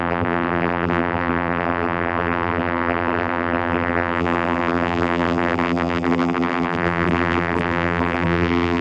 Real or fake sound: fake